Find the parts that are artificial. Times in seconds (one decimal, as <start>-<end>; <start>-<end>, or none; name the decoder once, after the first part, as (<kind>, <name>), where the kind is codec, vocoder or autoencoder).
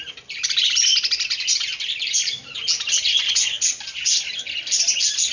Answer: none